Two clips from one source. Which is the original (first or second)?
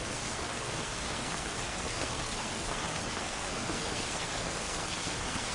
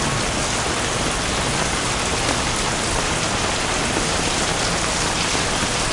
second